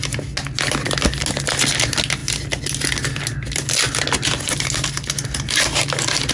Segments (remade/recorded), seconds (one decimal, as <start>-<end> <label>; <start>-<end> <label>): 0.0-6.3 recorded